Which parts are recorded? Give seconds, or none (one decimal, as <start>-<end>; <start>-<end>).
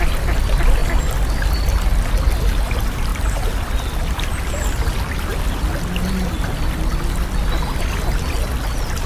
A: 0.0-3.1; 3.7-9.1